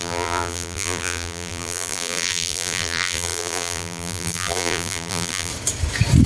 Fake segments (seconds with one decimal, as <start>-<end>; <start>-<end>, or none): 0.0-5.5